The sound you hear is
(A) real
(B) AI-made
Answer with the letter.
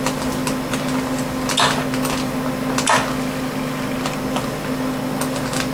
A